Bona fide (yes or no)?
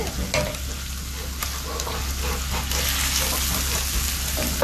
yes